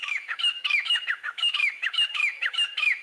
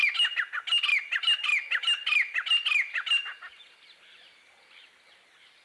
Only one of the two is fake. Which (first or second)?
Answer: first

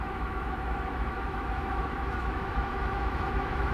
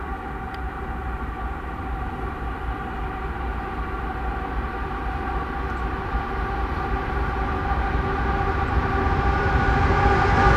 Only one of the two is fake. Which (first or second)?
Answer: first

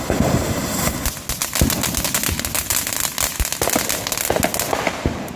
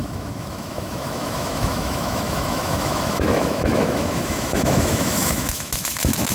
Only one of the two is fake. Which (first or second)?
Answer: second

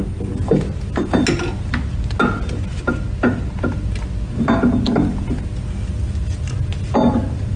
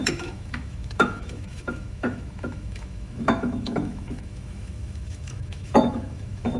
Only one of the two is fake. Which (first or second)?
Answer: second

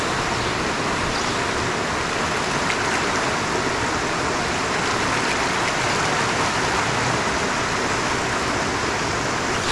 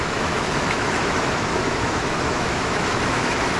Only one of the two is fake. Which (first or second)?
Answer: second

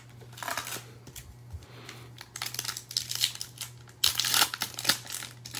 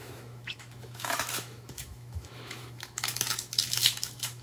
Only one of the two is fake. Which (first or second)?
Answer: second